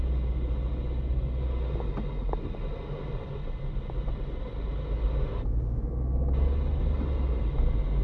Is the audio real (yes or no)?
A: yes